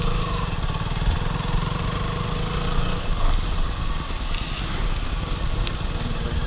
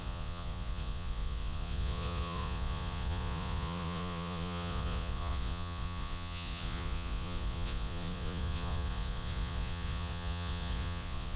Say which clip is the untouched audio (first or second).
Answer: first